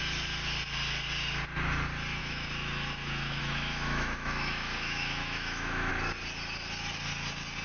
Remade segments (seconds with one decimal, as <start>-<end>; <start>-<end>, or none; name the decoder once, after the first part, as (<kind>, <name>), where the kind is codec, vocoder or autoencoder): 2.2-5.9 (autoencoder, DAC-VAE)

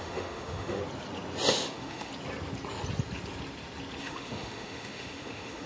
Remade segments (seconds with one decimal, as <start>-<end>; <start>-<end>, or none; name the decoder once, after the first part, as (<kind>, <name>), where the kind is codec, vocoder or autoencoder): 0.0-0.8 (autoencoder, DAC-VAE); 1.5-2.1; 4.0-5.7

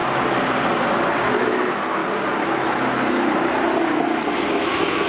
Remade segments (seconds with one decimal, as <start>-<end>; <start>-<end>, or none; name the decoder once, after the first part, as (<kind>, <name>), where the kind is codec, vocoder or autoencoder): 1.2-2.0 (autoencoder, DAC-VAE); 4.5-5.1

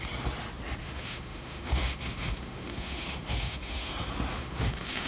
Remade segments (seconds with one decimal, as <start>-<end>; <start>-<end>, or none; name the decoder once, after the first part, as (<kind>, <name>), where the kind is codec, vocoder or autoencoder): 0.8-3.9 (autoencoder, DAC-VAE); 4.3-5.1

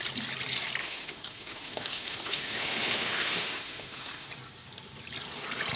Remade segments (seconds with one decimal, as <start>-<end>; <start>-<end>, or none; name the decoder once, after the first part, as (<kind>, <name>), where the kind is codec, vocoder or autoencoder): 0.8-4.3 (autoencoder, DAC-VAE)

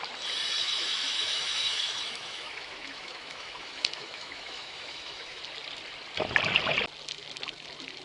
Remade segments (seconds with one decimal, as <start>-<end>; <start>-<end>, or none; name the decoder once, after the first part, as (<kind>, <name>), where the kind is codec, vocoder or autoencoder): 0.6-5.4 (autoencoder, DAC-VAE)

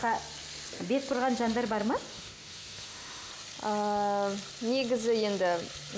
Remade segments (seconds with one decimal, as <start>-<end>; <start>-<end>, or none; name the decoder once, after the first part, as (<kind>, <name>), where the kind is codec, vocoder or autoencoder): 2.1-3.3 (autoencoder, DAC-VAE)